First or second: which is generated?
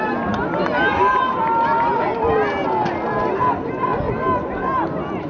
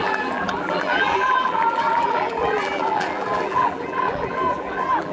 second